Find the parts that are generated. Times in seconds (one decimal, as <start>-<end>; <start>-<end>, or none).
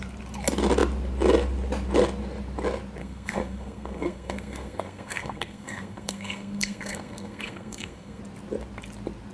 3.0-8.2